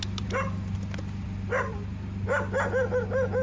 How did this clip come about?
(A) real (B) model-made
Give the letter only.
A